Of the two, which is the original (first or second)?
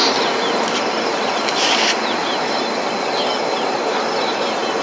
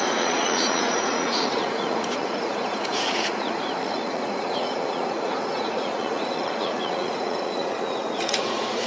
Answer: first